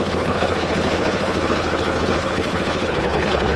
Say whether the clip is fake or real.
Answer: fake